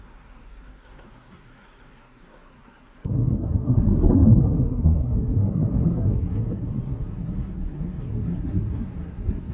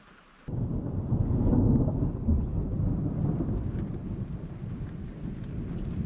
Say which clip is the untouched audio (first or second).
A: second